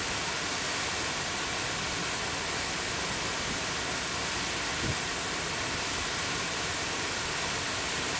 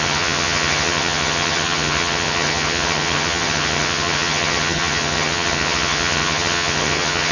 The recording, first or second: first